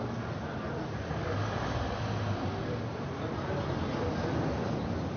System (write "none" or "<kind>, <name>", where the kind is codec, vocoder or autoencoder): none